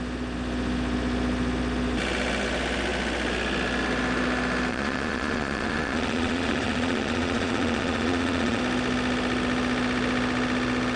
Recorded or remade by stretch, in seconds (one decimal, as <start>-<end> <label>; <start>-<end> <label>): 0.0-4.7 recorded; 4.7-8.6 remade; 8.6-11.0 recorded